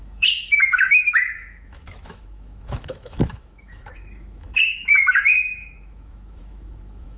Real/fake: fake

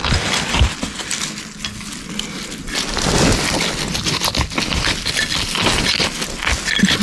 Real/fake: real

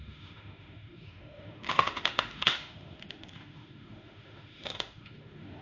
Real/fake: fake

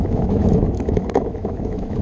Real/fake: fake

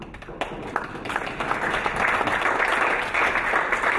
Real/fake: real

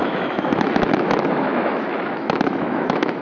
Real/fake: fake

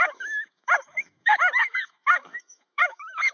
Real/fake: fake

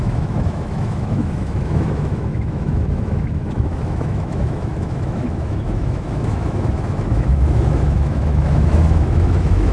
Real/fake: fake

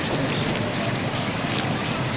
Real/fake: real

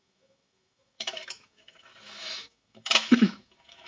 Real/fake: fake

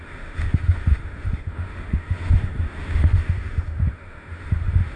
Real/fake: fake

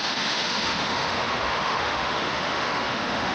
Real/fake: fake